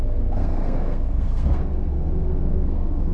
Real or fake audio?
fake